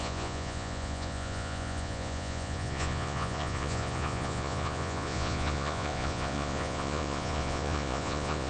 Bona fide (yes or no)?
no